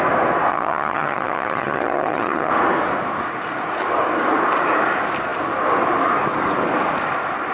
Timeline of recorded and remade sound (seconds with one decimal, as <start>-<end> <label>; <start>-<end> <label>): 0.0-0.5 recorded; 0.5-2.5 remade; 2.5-7.5 recorded